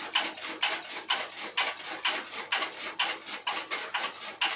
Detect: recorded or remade recorded